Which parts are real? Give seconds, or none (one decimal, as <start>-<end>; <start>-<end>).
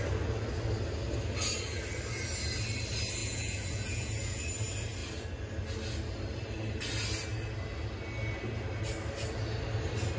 0.0-3.2; 4.4-10.2